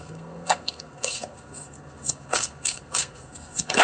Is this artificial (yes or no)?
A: yes